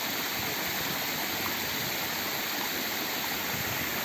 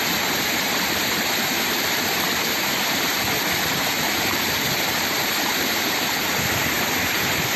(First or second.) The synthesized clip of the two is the second